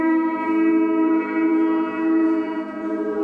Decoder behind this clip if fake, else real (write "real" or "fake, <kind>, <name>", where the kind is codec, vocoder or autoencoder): fake, vocoder, Vocos